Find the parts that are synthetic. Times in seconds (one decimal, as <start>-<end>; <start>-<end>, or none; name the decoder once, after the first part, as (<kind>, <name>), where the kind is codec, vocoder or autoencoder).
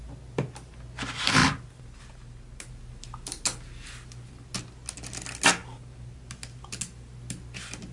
none